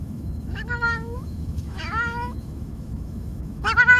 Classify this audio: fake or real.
fake